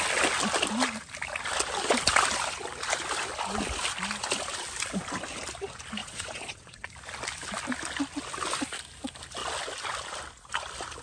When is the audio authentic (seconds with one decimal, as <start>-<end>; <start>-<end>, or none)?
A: 0.0-6.0; 6.9-11.0